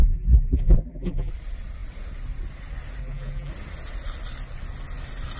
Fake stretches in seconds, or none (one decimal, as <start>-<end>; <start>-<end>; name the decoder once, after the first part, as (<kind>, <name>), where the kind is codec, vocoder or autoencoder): 0.0-1.3 (vocoder, BigVGAN v2); 3.0-3.5